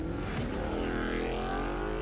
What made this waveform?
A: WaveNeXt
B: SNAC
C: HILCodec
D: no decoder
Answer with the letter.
D